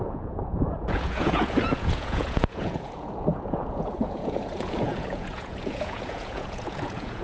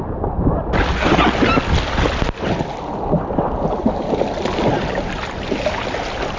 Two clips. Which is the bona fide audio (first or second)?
second